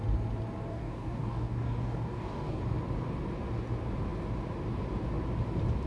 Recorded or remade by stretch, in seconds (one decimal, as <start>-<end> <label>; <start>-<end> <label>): 0.0-0.7 recorded; 0.7-2.6 remade; 2.6-5.9 recorded